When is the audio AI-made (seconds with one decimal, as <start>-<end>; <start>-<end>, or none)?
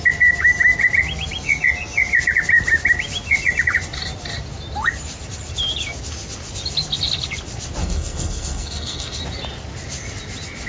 7.8-9.2